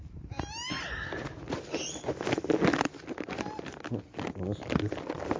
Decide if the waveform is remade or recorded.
recorded